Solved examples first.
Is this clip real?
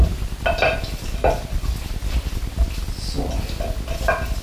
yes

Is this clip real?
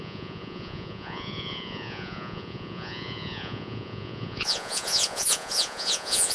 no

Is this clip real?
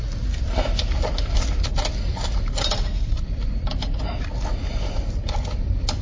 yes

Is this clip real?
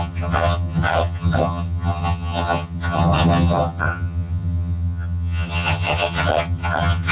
no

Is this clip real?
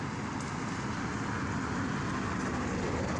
yes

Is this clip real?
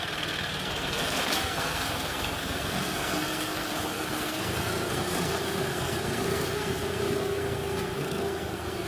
no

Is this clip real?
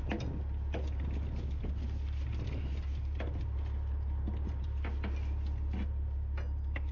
yes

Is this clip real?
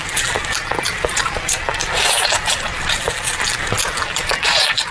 yes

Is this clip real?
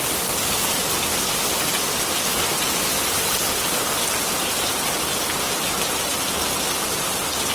yes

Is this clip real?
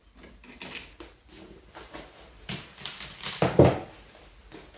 yes